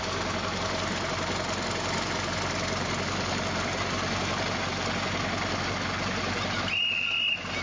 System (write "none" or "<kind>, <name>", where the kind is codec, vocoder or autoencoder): none